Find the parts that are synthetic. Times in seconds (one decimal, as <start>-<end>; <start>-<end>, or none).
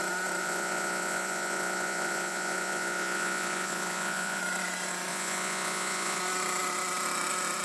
0.4-4.4; 5.1-6.2